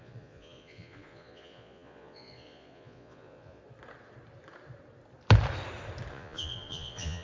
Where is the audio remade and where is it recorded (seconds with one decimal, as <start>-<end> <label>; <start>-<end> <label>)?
0.0-3.6 remade; 3.6-6.1 recorded; 6.1-7.2 remade